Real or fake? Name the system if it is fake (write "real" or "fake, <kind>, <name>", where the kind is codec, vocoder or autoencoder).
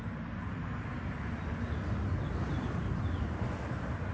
real